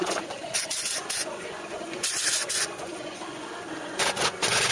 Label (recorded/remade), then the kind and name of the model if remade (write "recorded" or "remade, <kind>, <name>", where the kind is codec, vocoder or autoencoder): remade, vocoder, Vocos